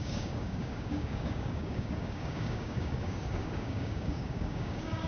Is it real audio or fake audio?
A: fake